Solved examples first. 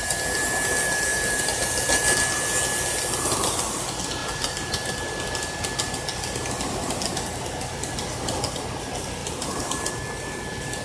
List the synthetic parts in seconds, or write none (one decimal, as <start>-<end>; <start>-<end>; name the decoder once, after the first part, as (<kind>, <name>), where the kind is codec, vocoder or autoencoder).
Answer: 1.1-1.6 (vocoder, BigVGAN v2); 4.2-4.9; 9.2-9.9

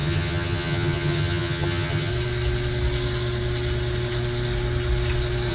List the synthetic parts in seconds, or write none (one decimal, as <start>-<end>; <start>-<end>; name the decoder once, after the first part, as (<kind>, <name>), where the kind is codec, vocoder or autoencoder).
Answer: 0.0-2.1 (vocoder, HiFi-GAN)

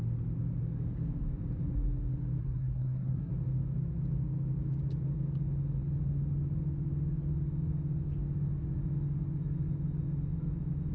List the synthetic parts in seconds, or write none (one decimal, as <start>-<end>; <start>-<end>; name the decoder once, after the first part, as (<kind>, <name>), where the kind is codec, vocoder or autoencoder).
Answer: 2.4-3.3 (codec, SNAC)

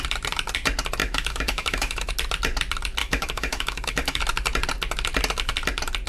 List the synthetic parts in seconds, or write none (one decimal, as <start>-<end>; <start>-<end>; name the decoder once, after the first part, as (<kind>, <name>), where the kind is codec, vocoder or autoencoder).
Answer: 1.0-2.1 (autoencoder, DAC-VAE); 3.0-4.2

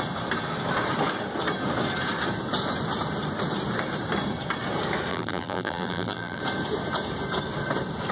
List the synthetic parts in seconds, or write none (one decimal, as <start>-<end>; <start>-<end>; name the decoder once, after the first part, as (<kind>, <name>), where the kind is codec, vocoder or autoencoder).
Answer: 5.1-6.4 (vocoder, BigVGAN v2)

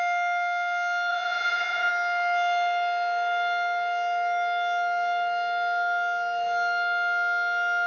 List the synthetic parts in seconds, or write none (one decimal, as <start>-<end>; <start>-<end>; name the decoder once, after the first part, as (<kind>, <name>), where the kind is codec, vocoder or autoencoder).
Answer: 1.1-1.9 (vocoder, Vocos)

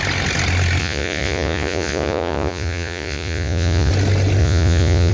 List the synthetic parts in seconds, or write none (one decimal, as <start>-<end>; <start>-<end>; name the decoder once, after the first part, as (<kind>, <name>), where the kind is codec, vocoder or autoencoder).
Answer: 0.8-3.9 (vocoder, Vocos); 4.4-5.1

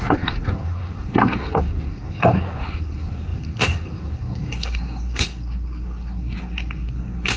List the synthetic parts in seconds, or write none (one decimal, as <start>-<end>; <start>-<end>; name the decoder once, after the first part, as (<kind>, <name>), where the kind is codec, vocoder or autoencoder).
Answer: 0.0-7.4 (codec, SNAC)